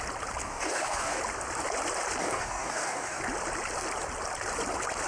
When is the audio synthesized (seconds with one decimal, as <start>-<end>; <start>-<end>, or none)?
0.4-1.2; 2.2-3.2